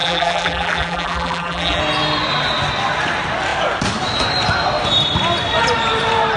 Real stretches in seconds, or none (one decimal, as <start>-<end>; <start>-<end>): 1.8-6.4